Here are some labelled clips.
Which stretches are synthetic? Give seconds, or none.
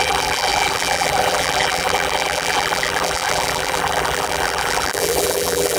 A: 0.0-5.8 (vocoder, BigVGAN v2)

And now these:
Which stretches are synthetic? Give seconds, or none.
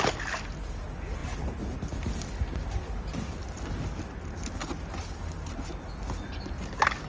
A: none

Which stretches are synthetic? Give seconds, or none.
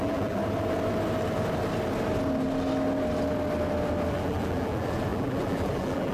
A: 0.0-0.4 (vocoder, BigVGAN v2); 4.1-6.1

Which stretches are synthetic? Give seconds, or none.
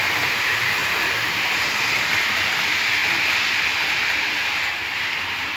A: 0.0-0.8 (vocoder, BigVGAN v2); 2.6-3.0; 3.9-5.6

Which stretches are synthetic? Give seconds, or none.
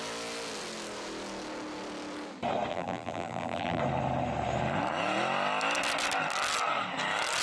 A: 2.7-3.8 (vocoder, BigVGAN v2)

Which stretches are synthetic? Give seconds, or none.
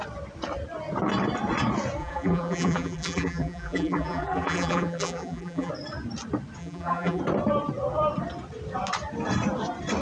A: 2.0-5.7 (vocoder, BigVGAN v2); 6.6-7.2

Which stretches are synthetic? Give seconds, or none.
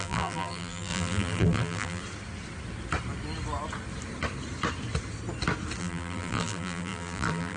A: 0.0-2.0 (vocoder, BigVGAN v2); 5.8-7.6